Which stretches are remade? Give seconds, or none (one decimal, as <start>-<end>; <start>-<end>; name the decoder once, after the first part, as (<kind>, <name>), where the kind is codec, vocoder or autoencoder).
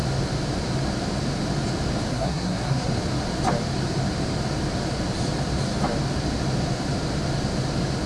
2.1-2.9 (codec, SNAC)